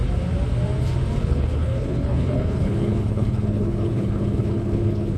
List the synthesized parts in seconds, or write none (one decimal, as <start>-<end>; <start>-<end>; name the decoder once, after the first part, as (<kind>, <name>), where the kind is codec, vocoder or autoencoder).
1.2-5.2 (codec, HILCodec)

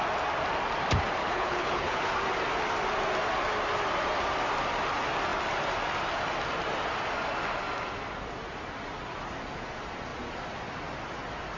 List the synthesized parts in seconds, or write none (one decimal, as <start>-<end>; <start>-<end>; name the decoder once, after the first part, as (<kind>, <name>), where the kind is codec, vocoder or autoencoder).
1.2-2.1 (codec, HILCodec)

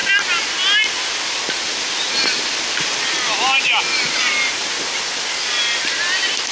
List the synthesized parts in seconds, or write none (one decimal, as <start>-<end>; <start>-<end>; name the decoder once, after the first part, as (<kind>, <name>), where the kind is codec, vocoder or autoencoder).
none

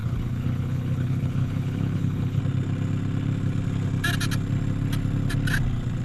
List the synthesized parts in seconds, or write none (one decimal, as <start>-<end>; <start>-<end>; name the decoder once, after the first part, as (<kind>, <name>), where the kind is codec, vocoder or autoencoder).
0.0-2.4 (codec, HILCodec)